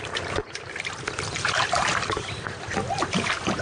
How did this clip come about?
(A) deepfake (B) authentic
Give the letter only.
A